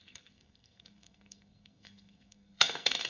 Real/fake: fake